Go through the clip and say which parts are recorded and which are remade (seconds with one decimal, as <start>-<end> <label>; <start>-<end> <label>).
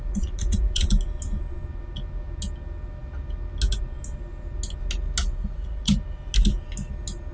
0.0-0.9 remade; 0.9-5.2 recorded; 5.2-5.9 remade; 5.9-7.3 recorded